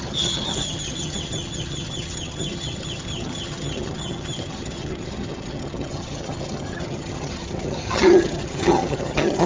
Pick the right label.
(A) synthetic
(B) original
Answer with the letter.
A